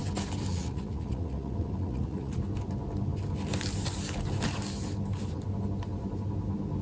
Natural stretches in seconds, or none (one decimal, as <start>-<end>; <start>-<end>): 0.0-0.5; 2.4-6.8